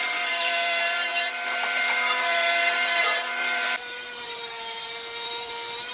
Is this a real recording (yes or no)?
no